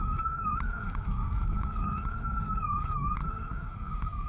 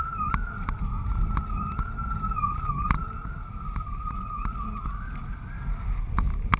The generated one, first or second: first